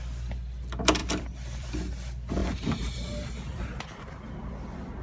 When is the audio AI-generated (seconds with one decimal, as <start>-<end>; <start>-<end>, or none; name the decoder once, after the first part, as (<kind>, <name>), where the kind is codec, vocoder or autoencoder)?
1.0-1.7 (vocoder, BigVGAN v2)